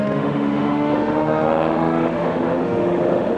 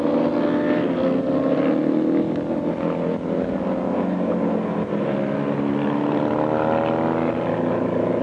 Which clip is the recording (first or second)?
second